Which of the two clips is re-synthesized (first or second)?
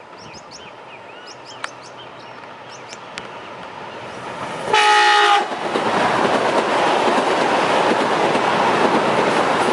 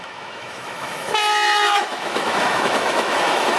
second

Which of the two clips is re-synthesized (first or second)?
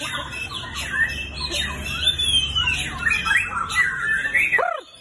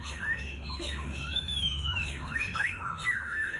second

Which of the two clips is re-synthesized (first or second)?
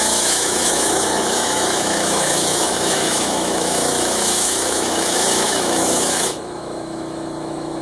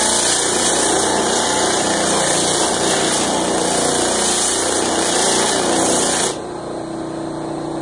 first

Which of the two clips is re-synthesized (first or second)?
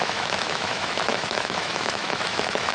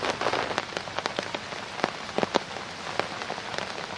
first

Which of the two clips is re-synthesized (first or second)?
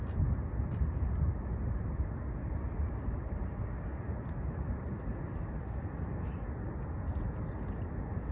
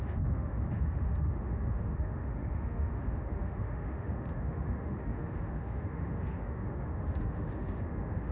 second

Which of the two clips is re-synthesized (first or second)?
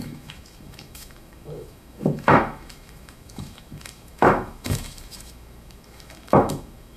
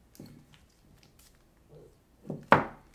first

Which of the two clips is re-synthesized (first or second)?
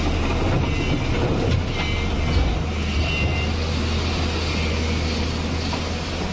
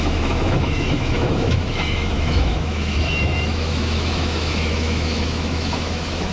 second